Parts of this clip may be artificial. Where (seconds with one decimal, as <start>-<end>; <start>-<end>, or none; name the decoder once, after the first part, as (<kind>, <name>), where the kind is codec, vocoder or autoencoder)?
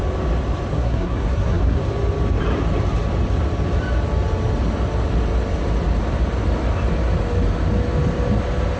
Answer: 0.7-1.8 (codec, SNAC)